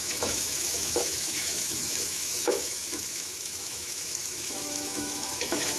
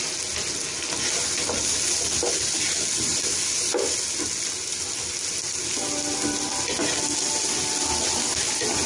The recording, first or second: second